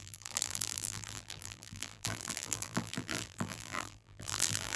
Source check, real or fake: fake